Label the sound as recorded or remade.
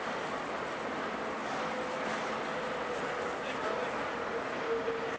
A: recorded